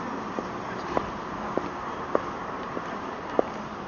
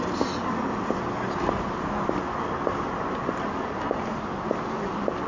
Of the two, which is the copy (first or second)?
first